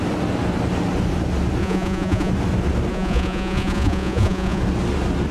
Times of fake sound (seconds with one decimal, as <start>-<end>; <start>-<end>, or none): 1.6-2.3; 2.9-4.6